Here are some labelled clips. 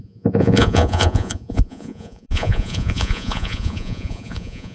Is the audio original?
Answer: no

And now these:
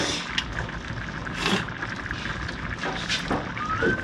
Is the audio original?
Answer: yes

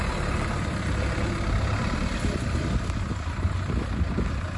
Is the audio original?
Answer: no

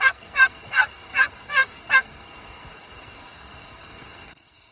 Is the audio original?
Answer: no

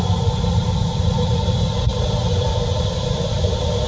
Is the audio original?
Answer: yes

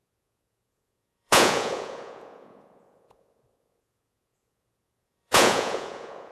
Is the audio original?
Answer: no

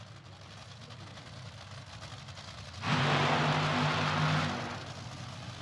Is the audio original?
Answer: yes